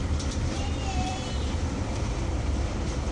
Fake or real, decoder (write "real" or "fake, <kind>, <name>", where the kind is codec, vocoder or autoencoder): fake, vocoder, BigVGAN v2